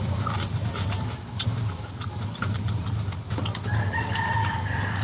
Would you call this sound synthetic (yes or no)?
no